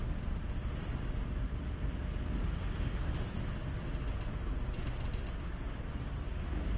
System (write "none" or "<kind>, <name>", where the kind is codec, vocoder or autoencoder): none